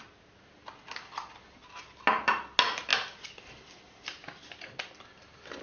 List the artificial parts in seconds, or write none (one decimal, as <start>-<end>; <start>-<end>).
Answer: none